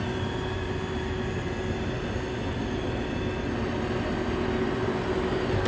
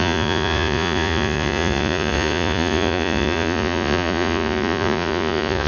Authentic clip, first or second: first